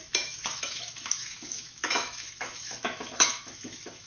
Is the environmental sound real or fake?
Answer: fake